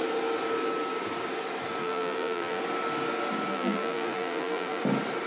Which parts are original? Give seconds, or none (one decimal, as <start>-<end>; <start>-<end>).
0.0-1.8; 2.6-3.5; 4.8-5.3